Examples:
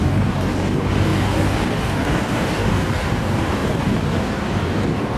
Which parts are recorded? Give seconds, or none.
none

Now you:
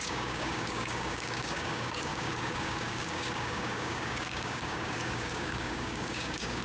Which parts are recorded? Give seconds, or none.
none

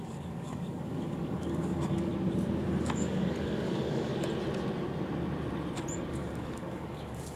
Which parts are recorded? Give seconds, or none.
2.1-2.8; 4.1-6.1

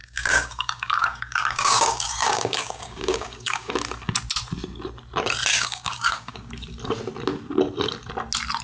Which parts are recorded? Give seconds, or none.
3.7-5.5; 6.6-8.6

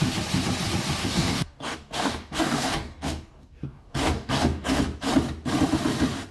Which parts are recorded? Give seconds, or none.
0.0-1.0; 4.8-6.3

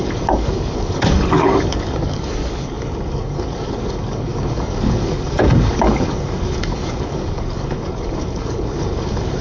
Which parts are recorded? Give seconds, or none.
none

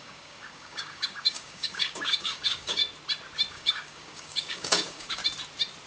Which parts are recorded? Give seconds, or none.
2.8-3.5; 5.2-5.9

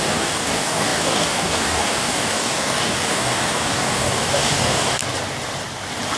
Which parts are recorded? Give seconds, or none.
5.0-6.2